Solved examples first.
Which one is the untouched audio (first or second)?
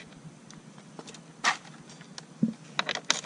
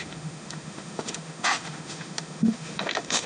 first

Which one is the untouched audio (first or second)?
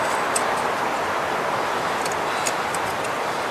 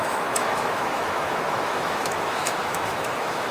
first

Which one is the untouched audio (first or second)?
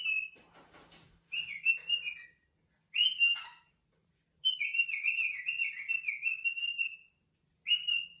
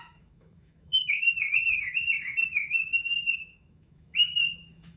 first